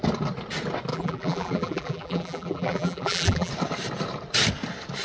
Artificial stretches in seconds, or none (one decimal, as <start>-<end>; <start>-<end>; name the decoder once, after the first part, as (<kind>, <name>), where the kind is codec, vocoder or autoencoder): 0.9-3.5 (vocoder, BigVGAN v2)